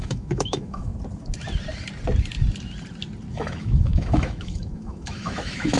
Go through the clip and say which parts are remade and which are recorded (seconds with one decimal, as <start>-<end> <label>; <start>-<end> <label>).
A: 0.0-0.9 remade; 0.9-3.3 recorded; 3.3-5.8 remade